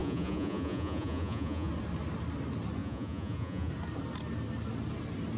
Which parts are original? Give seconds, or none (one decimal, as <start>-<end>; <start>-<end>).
1.7-2.8; 3.7-5.4